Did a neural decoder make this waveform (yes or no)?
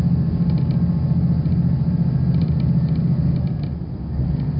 no